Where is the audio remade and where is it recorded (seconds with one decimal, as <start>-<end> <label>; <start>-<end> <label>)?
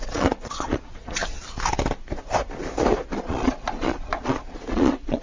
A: 0.0-1.2 remade; 1.2-3.2 recorded; 3.2-5.2 remade